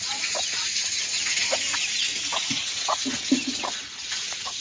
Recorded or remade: remade